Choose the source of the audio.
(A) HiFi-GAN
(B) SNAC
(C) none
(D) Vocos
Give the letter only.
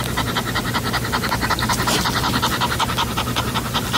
C